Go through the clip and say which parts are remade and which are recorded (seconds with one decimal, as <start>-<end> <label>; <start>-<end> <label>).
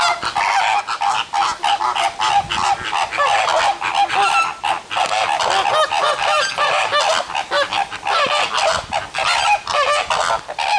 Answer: 0.0-10.8 recorded